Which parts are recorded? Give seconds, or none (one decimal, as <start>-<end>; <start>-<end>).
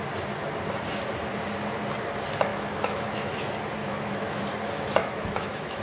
0.0-2.5; 3.3-3.8; 4.4-5.0